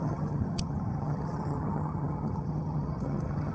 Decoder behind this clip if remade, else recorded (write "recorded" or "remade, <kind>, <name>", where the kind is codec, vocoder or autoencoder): remade, vocoder, HiFi-GAN